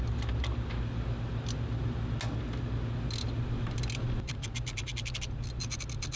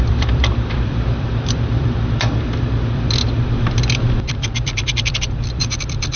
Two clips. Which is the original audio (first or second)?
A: first